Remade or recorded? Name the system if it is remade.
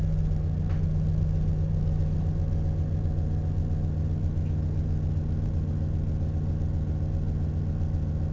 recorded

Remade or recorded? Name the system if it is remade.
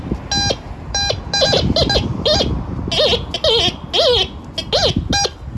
recorded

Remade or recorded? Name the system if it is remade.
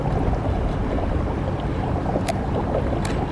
recorded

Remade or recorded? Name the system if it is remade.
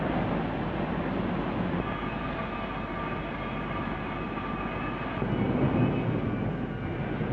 recorded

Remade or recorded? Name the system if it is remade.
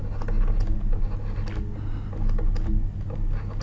recorded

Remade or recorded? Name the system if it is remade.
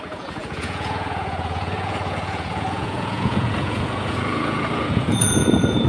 remade, vocoder, Vocos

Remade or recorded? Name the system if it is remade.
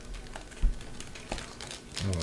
recorded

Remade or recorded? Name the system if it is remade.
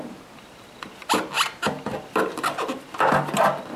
recorded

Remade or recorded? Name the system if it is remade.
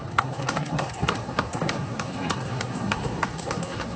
remade, codec, SNAC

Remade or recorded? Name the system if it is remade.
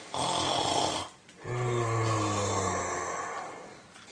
recorded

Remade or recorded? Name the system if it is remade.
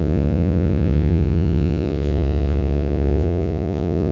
remade, vocoder, Vocos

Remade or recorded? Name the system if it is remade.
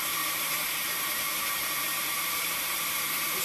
remade, vocoder, BigVGAN v2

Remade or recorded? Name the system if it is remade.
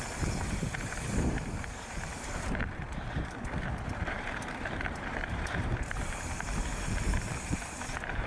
remade, vocoder, BigVGAN v2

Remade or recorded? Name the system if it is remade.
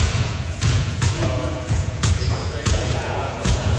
remade, vocoder, Vocos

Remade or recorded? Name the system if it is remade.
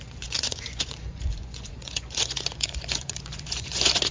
remade, vocoder, Vocos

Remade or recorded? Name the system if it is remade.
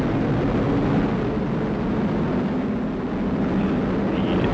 recorded